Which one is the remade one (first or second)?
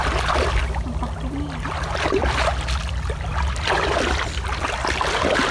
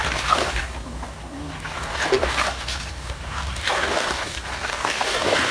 second